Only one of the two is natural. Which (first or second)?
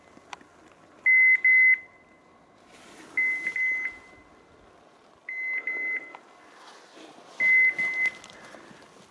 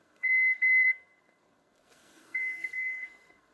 first